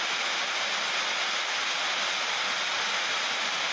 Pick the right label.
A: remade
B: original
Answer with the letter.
B